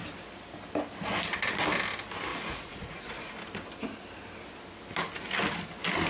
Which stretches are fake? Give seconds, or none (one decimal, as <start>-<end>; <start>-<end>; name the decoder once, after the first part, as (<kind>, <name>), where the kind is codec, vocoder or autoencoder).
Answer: 2.3-3.3 (vocoder, Vocos)